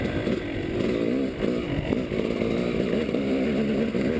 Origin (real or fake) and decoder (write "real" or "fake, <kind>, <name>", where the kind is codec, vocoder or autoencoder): real